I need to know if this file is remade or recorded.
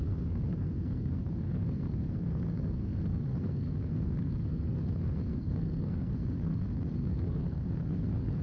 remade